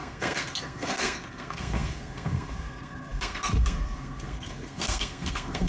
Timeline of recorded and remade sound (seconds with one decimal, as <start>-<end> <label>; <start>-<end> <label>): 0.0-5.7 remade